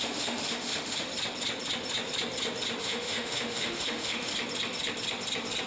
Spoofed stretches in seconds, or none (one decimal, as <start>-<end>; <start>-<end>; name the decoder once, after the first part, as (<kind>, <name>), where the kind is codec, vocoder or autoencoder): 0.0-1.1 (autoencoder, DAC-VAE); 2.8-4.3